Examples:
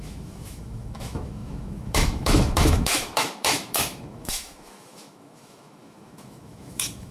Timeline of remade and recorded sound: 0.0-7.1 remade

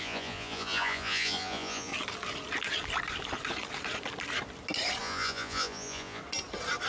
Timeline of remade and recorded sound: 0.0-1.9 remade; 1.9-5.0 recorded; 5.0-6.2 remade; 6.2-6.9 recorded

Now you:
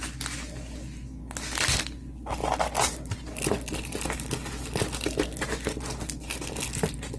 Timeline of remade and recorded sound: 0.0-7.2 recorded

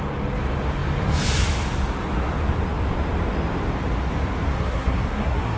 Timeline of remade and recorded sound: 0.0-4.5 recorded; 4.5-5.6 remade

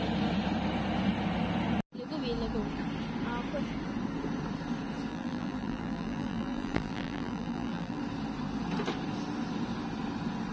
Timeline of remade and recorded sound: 0.0-5.1 recorded; 5.1-8.0 remade; 8.0-10.5 recorded